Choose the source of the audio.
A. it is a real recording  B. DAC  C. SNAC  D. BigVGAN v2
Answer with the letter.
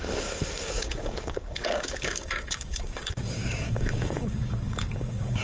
B